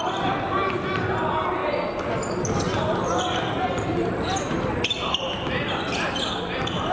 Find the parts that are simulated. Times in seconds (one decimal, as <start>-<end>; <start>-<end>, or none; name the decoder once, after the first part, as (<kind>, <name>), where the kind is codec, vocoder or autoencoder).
none